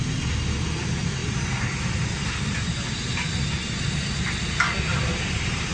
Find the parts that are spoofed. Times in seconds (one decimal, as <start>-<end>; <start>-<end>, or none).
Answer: 1.2-3.3; 4.9-5.7